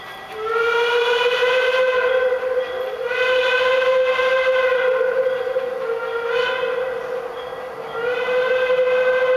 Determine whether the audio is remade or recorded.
recorded